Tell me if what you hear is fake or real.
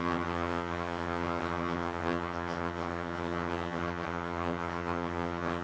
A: fake